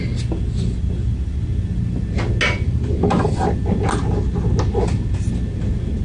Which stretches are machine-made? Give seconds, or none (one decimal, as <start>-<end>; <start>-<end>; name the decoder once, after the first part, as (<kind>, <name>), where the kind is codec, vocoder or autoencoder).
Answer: none